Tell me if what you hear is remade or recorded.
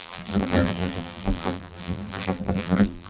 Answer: remade